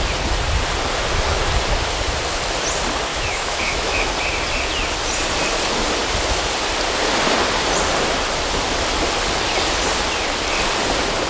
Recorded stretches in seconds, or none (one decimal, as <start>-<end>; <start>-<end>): 0.0-3.1; 4.1-11.3